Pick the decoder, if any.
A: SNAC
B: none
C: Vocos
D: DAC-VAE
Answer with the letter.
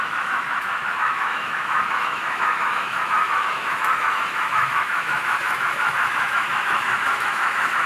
D